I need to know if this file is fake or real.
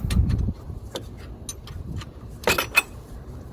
real